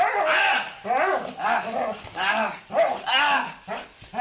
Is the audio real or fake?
real